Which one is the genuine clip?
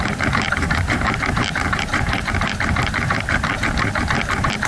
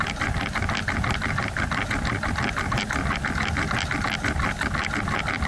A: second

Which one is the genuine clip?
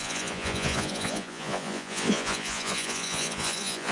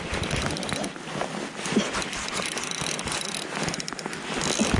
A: second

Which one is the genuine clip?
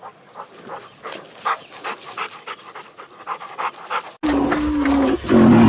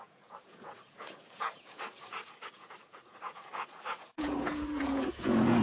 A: first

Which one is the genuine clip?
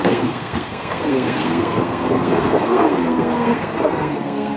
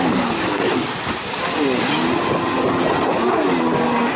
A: second